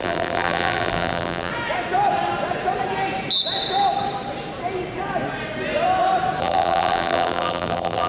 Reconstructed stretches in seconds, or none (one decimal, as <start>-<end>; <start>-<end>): 0.0-1.5; 6.4-8.1